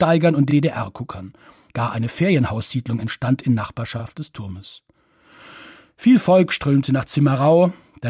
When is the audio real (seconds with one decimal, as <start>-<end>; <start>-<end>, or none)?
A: 0.0-8.1